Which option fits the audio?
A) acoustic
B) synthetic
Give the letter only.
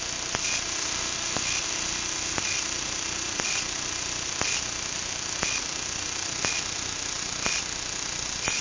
A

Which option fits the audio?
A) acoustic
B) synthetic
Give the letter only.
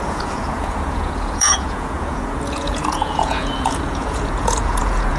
B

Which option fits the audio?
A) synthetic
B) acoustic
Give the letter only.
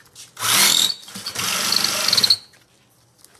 B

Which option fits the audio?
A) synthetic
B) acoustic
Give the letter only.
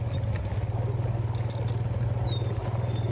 B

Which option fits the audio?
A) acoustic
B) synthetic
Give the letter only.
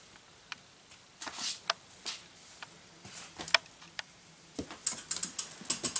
A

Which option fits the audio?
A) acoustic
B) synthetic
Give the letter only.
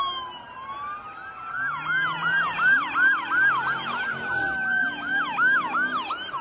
A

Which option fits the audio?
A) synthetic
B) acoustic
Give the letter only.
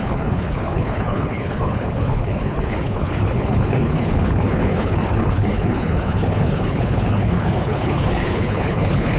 A